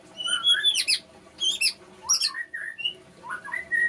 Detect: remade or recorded recorded